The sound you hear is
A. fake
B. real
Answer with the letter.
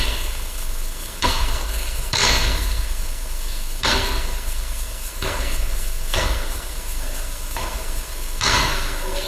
A